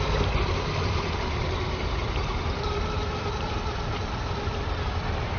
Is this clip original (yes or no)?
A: yes